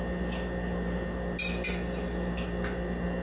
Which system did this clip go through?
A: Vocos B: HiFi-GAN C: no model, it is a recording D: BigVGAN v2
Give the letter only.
C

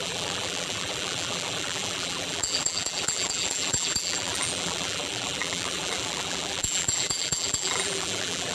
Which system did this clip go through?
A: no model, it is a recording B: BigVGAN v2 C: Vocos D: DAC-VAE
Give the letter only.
B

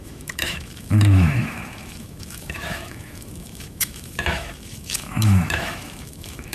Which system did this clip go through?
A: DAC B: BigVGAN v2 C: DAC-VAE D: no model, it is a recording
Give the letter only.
C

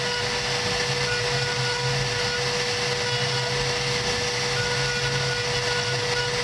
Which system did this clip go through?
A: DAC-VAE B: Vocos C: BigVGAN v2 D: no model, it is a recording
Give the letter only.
D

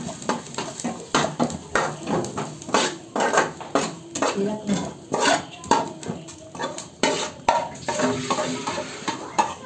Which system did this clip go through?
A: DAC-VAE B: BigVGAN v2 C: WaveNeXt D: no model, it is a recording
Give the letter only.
D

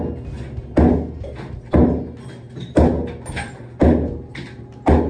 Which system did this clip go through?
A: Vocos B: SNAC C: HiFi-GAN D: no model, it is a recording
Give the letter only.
D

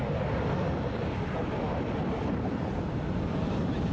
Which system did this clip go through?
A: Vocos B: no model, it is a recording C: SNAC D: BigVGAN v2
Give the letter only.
B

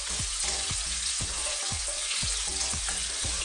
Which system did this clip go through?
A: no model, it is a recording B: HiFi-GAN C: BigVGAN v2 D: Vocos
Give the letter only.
D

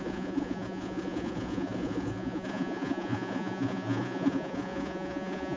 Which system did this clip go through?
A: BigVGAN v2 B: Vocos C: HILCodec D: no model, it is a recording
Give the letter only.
B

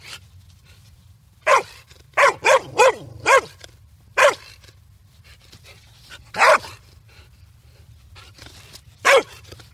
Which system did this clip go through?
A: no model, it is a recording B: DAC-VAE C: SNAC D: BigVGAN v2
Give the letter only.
D